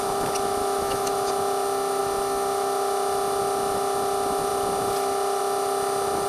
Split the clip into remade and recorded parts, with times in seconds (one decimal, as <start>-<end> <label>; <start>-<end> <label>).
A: 0.0-0.6 recorded; 0.6-1.3 remade; 1.3-6.3 recorded